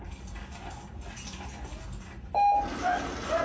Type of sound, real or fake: real